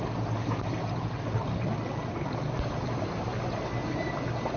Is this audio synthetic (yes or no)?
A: no